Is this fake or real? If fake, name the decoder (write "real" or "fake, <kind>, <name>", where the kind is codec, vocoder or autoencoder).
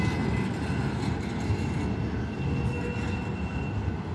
real